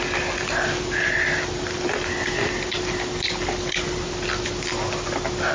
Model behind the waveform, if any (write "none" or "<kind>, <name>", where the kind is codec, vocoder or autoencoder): none